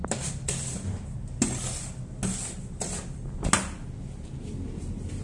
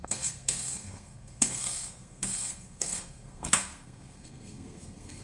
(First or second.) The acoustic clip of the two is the first